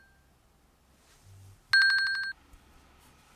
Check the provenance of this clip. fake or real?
real